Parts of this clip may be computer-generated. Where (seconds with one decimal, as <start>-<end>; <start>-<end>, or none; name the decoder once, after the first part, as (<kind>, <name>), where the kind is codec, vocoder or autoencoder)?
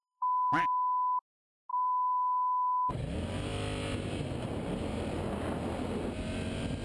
0.0-0.6 (vocoder, BigVGAN v2); 1.7-2.9